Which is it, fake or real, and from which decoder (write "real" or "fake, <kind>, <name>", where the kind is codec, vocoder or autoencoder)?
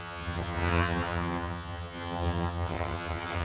fake, vocoder, HiFi-GAN